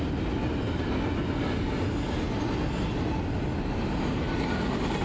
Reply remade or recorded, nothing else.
recorded